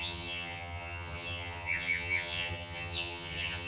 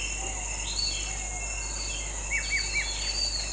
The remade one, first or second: first